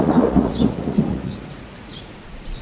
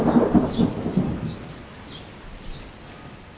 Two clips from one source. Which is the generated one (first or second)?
first